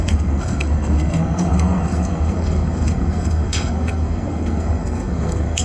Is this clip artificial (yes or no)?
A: yes